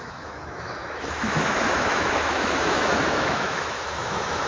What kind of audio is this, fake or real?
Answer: fake